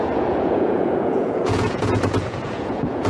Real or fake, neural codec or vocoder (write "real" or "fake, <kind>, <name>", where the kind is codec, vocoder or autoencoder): fake, vocoder, Vocos